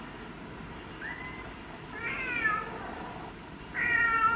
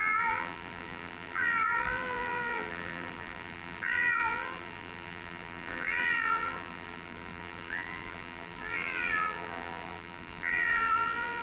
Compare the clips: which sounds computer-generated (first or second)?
second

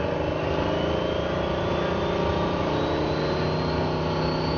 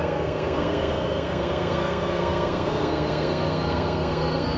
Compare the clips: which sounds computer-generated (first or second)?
second